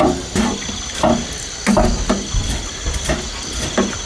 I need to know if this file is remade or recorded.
recorded